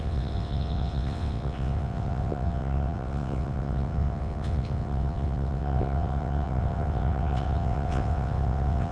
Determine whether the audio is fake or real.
fake